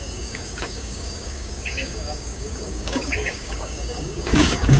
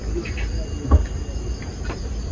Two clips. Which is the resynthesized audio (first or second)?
first